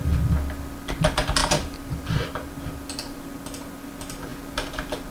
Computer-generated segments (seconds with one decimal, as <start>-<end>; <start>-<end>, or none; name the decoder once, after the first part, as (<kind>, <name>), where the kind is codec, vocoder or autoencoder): 1.4-2.5 (vocoder, BigVGAN v2)